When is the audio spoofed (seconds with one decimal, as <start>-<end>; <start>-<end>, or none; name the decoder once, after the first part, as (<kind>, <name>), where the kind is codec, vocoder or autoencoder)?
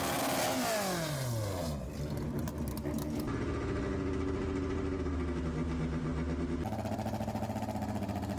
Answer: none